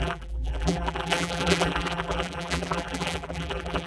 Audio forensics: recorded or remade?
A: remade